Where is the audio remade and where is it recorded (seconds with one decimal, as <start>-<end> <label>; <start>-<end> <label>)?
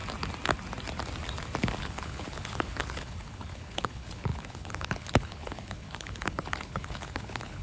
0.0-1.8 recorded; 1.8-7.6 remade